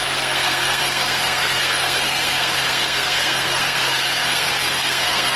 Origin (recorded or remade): remade